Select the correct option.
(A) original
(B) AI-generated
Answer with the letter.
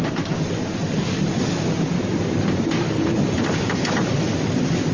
A